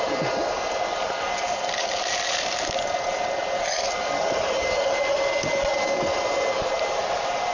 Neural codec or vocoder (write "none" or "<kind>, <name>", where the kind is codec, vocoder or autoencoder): none